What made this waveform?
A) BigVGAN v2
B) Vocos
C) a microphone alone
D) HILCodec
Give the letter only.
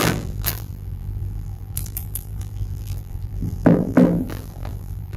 A